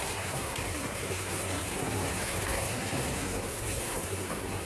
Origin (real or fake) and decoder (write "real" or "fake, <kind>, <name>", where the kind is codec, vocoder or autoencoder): fake, codec, SNAC